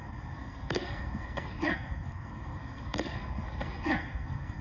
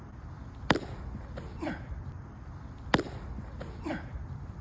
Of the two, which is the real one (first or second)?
second